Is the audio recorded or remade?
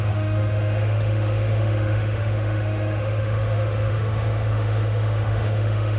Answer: remade